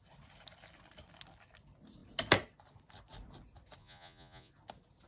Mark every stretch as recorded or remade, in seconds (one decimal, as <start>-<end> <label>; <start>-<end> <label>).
0.0-3.8 recorded; 3.8-4.5 remade; 4.5-5.1 recorded